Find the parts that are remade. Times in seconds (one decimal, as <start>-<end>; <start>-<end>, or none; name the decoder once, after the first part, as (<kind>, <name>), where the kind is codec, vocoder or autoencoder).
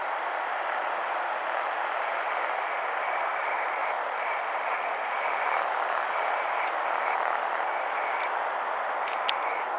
3.8-7.8 (vocoder, BigVGAN v2)